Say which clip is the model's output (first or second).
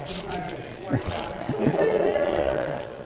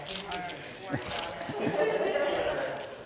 first